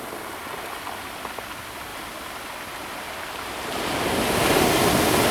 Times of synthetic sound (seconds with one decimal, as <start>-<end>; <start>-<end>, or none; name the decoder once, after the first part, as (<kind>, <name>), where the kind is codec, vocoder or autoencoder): none